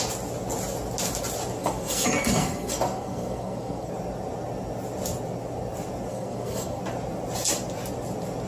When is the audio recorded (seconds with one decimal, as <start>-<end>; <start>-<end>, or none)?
0.0-1.6; 3.9-6.1; 6.8-8.5